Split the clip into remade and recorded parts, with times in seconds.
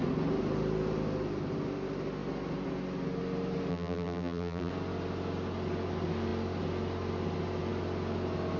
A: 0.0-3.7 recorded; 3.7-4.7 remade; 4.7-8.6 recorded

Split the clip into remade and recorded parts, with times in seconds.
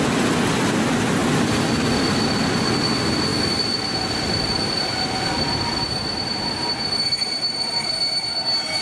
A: 0.0-8.8 recorded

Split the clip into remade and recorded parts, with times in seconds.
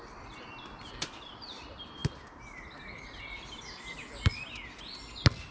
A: 0.0-5.5 recorded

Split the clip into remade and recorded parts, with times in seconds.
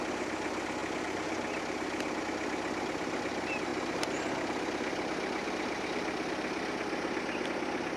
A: 0.0-8.0 recorded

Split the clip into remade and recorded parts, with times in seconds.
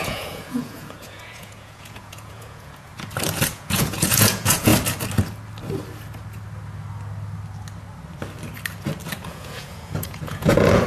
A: 0.0-2.9 remade; 2.9-3.5 recorded; 3.5-4.7 remade; 4.7-9.2 recorded; 9.2-10.9 remade